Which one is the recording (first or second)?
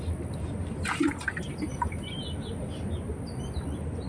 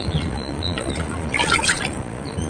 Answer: first